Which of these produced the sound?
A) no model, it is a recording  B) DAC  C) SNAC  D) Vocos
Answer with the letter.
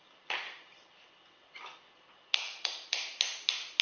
A